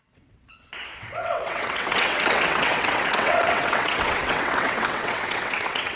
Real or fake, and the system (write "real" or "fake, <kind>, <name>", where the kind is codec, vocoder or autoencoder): fake, vocoder, WaveNeXt